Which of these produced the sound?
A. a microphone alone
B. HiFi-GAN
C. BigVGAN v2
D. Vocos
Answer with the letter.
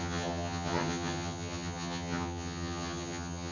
B